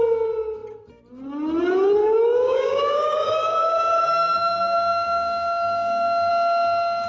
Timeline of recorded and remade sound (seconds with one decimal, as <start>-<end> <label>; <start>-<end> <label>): 0.0-2.0 recorded; 2.0-6.3 remade; 6.3-7.1 recorded